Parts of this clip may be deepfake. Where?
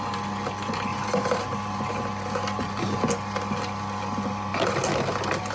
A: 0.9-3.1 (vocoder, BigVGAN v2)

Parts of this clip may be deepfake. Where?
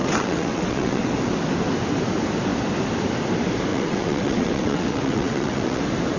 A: 0.0-1.1 (vocoder, WaveNeXt); 3.7-5.8